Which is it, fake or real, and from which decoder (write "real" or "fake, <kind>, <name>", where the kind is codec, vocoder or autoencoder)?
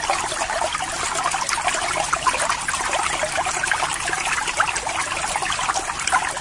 real